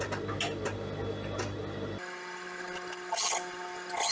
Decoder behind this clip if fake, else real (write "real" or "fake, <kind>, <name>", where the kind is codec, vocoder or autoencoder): real